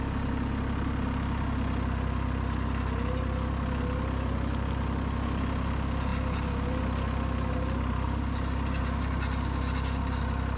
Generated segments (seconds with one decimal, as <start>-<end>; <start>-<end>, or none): none